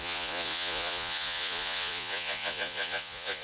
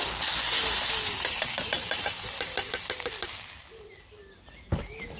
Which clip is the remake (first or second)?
first